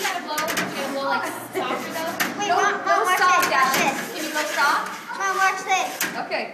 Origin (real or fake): real